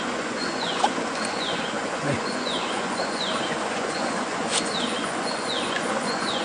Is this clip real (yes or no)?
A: no